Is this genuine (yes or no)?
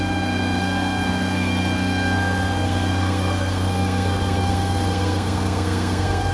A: no